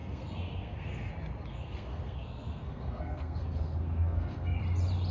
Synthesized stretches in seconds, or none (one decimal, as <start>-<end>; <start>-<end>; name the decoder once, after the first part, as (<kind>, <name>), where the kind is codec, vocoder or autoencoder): 0.0-1.1 (codec, SNAC); 1.5-4.6